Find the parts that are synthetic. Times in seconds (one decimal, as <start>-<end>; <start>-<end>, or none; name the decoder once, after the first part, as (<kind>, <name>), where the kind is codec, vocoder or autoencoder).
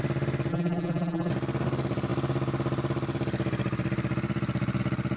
0.5-1.3 (vocoder, BigVGAN v2)